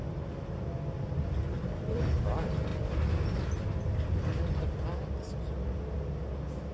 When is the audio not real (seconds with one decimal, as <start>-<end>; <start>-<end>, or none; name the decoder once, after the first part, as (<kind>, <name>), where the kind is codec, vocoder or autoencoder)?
none